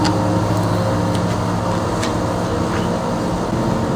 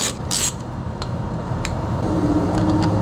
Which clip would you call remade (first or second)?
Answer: second